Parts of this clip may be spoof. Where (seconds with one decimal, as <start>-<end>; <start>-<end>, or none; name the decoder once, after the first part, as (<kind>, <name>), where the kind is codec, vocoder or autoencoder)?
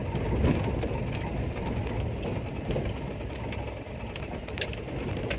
none